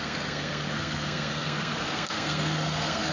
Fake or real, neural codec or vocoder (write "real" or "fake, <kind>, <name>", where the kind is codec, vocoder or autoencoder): fake, codec, SNAC